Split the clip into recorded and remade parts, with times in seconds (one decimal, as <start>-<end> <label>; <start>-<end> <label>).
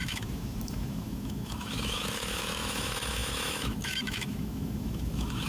0.0-5.5 remade